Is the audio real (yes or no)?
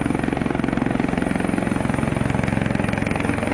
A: yes